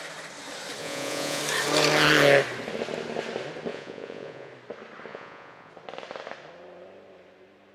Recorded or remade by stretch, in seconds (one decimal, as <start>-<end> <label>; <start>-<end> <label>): 0.0-0.8 recorded; 0.8-1.4 remade; 1.4-3.7 recorded; 3.7-4.5 remade; 4.5-5.1 recorded; 5.1-5.7 remade; 5.7-7.7 recorded